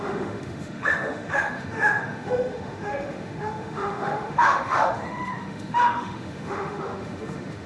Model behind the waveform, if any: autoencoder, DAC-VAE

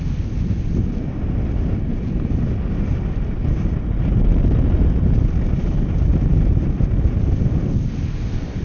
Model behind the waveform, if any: none